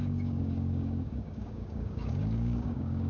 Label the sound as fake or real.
fake